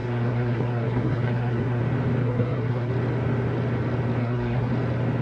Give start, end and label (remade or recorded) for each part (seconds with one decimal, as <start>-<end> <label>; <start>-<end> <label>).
0.0-1.8 remade; 1.8-2.2 recorded; 2.2-2.9 remade; 2.9-4.2 recorded; 4.2-4.7 remade; 4.7-5.2 recorded